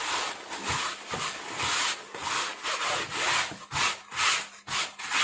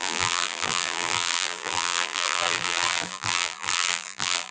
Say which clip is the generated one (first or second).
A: second